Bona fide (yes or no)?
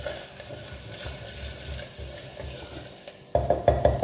yes